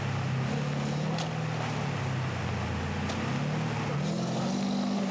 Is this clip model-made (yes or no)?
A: no